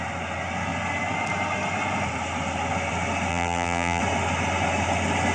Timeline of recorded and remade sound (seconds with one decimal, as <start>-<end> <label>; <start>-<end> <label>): 0.0-3.3 recorded; 3.3-4.0 remade; 4.0-5.3 recorded